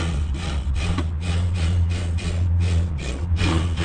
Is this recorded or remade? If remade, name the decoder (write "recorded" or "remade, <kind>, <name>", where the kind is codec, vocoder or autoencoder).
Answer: remade, vocoder, Vocos